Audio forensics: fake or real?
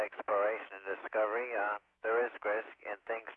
fake